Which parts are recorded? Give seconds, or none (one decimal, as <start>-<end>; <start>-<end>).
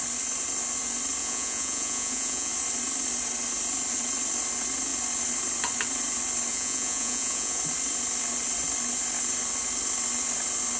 0.0-1.2; 2.5-6.5; 7.6-10.8